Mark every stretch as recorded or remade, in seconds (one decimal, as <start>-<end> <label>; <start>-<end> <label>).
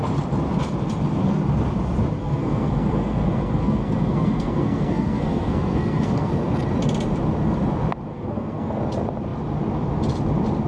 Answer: 0.0-2.2 recorded; 2.2-6.3 remade; 6.3-8.1 recorded; 8.1-8.8 remade; 8.8-10.7 recorded